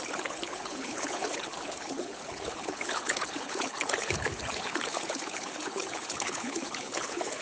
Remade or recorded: remade